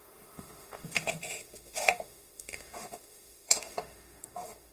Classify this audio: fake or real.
fake